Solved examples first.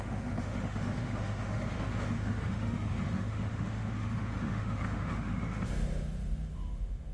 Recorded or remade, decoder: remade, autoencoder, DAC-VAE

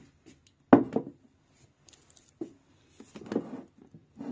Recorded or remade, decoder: recorded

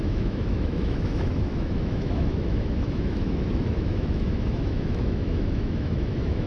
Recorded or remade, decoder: remade, autoencoder, DAC-VAE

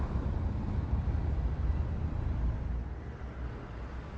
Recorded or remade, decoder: recorded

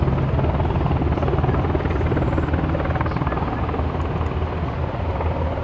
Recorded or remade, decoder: recorded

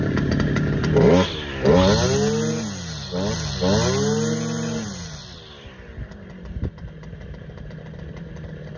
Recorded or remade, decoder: recorded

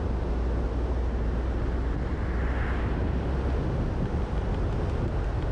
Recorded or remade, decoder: recorded